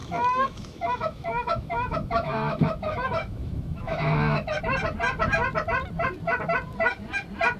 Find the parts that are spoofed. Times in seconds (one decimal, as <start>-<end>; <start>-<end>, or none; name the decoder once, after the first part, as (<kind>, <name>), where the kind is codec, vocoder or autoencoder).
0.0-4.6 (autoencoder, DAC-VAE)